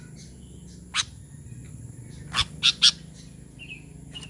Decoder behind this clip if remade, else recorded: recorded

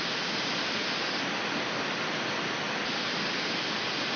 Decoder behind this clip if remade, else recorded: recorded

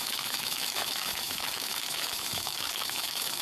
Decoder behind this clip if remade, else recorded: remade, autoencoder, DAC-VAE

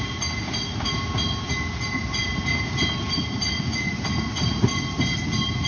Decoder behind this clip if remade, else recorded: recorded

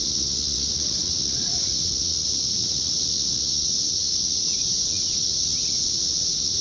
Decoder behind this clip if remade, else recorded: remade, vocoder, Vocos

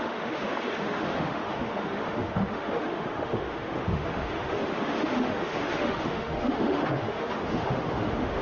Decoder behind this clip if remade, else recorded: remade, autoencoder, DAC-VAE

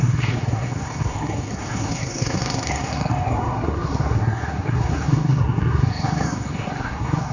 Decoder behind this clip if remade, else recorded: remade, codec, SNAC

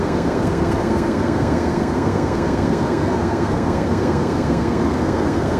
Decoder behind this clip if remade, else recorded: remade, codec, SNAC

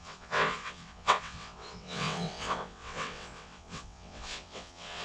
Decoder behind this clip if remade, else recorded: remade, vocoder, WaveNeXt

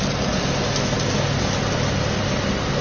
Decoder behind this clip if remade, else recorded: recorded